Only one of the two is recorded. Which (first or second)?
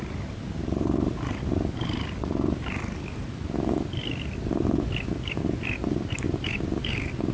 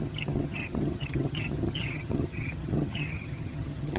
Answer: first